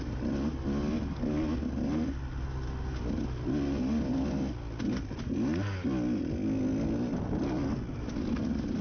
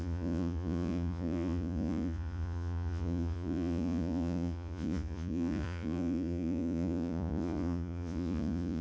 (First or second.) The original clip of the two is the first